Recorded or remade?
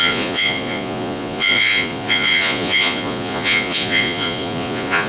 remade